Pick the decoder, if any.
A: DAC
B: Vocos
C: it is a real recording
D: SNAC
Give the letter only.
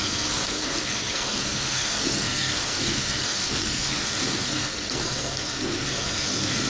D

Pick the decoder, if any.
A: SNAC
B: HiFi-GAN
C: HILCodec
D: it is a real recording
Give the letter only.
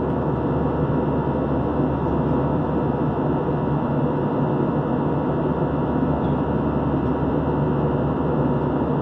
D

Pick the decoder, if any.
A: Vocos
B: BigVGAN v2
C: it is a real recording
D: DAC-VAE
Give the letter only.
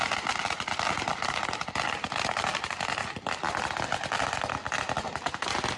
C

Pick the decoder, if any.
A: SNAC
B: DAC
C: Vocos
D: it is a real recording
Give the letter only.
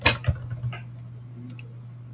D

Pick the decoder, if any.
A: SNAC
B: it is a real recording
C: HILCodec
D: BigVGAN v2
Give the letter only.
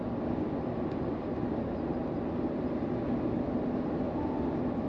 B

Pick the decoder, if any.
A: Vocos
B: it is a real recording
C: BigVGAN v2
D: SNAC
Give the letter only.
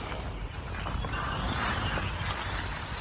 B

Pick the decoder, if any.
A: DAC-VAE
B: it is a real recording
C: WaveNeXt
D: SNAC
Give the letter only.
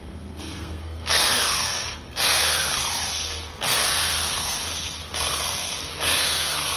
D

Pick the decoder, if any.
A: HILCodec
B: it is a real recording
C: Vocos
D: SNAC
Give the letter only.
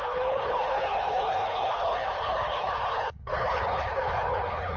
A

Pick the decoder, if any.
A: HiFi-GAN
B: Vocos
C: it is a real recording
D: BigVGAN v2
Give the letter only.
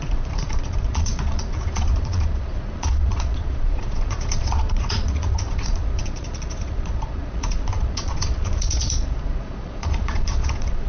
B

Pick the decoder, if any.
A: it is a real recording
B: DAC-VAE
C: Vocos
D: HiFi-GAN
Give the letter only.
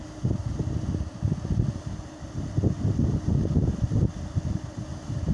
A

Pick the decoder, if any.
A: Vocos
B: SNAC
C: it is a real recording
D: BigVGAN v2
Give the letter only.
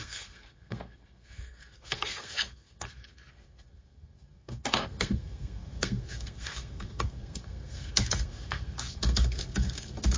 B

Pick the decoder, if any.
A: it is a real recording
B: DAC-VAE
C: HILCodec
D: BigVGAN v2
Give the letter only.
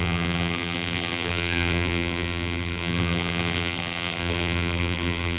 D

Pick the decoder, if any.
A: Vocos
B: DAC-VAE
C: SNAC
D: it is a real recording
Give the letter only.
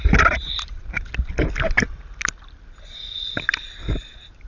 D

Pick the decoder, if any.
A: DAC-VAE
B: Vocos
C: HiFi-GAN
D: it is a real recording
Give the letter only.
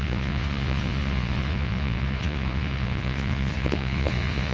B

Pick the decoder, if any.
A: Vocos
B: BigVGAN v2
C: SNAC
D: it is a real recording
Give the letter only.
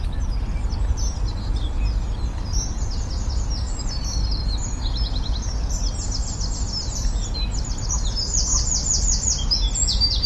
D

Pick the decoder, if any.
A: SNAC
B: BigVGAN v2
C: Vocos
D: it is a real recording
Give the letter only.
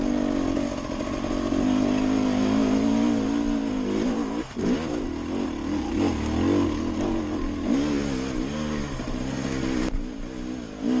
D